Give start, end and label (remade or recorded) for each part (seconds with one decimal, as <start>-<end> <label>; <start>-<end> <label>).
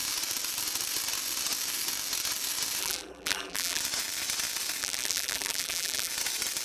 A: 0.0-2.8 recorded; 2.8-3.8 remade; 3.8-4.8 recorded; 4.8-6.1 remade; 6.1-6.6 recorded